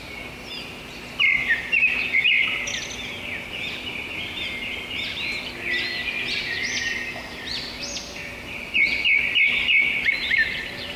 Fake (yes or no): no